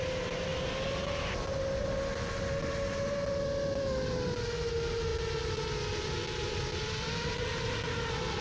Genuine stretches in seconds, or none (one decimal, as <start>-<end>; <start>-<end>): 0.0-8.4